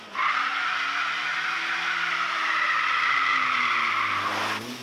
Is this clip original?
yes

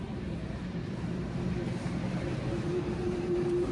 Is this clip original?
no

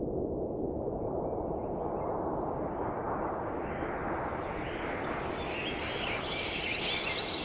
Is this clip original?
yes